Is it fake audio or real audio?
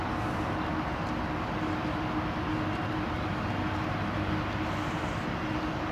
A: real